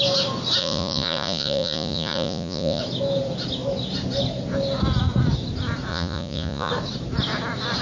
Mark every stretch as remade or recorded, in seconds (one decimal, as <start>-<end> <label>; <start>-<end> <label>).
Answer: 0.0-0.6 recorded; 0.6-2.8 remade; 2.8-5.9 recorded; 5.9-6.7 remade; 6.7-7.8 recorded